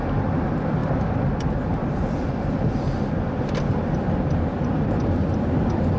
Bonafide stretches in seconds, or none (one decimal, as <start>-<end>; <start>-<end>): 0.0-0.8; 3.4-3.8; 5.0-6.0